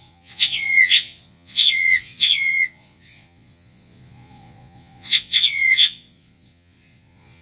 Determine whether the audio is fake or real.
fake